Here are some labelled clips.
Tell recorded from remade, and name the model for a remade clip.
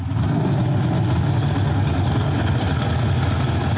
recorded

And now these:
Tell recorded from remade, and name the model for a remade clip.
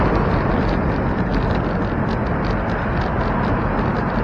recorded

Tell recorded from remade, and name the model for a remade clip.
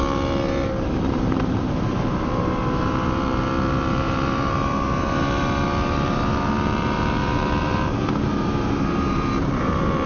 remade, vocoder, BigVGAN v2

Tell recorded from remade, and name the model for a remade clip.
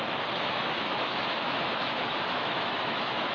remade, autoencoder, DAC-VAE